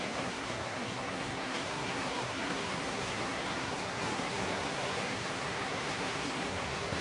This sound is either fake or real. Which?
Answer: fake